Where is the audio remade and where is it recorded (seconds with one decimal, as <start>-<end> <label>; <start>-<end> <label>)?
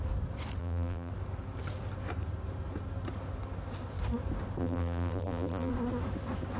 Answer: 0.0-0.6 recorded; 0.6-1.1 remade; 1.1-4.6 recorded; 4.6-5.7 remade; 5.7-6.6 recorded